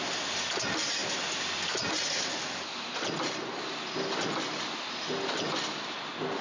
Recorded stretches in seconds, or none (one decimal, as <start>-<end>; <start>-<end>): 0.0-6.4